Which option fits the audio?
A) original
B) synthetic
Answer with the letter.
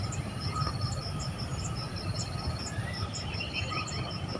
B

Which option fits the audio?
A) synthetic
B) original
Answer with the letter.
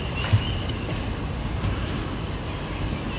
B